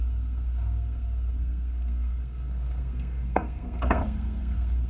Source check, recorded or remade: remade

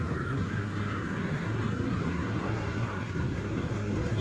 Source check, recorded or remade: remade